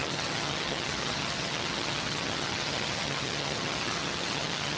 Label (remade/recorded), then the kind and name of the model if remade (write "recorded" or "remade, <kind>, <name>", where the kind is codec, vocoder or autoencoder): remade, vocoder, HiFi-GAN